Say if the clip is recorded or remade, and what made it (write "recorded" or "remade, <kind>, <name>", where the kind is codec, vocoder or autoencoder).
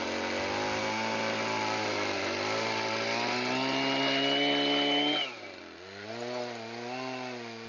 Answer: recorded